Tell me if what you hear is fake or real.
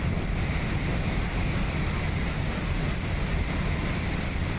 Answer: real